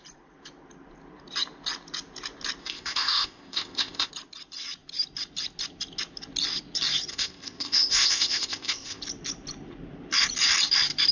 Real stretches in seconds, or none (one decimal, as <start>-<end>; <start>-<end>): 0.0-2.6; 4.1-7.1; 9.0-11.1